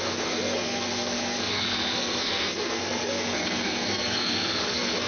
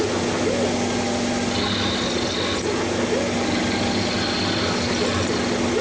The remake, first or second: first